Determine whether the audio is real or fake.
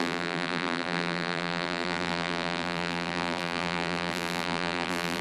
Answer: fake